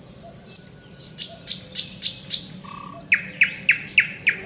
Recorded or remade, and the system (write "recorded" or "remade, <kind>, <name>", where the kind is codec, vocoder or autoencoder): recorded